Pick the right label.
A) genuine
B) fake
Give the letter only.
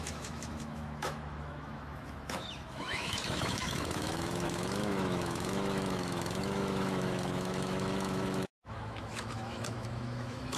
B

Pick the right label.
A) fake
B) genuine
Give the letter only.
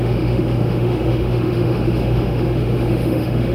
A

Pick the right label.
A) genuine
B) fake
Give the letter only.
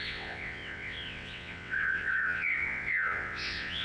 B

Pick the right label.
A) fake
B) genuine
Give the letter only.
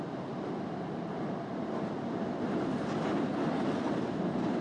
B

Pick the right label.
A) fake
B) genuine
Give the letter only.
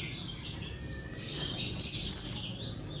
B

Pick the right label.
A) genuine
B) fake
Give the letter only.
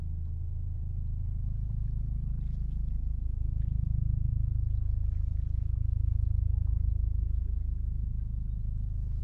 A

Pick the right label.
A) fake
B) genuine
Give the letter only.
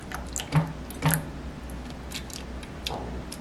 B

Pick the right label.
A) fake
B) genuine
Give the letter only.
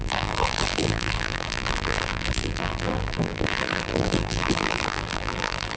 A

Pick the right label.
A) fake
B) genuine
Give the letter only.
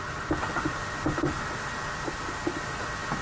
B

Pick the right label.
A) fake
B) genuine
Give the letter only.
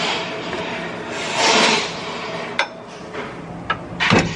B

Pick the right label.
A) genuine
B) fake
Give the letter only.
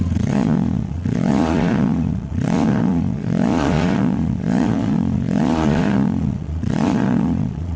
B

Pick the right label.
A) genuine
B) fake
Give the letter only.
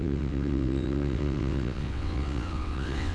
B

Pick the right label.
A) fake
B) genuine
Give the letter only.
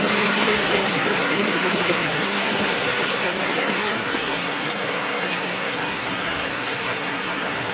A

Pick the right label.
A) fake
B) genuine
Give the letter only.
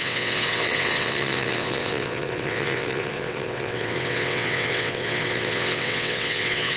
A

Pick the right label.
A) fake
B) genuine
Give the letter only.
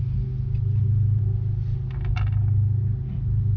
B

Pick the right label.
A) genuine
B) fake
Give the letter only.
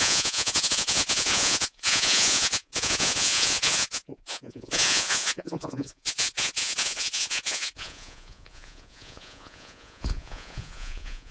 B